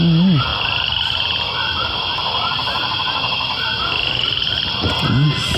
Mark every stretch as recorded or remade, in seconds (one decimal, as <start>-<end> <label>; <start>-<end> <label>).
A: 0.0-5.6 recorded